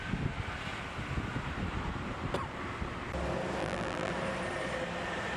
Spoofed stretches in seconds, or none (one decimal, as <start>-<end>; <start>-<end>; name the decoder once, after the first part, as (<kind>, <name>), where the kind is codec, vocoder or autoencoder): 3.6-4.1 (vocoder, BigVGAN v2)